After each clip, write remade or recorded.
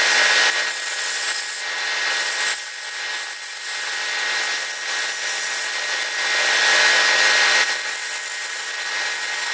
recorded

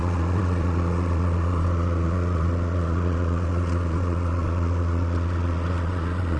remade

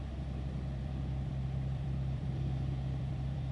remade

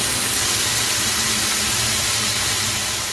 recorded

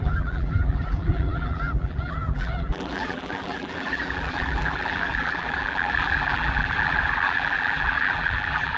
remade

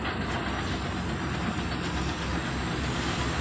recorded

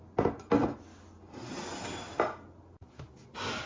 recorded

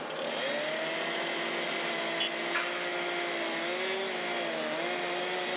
recorded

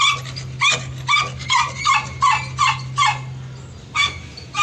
recorded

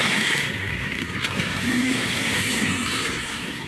remade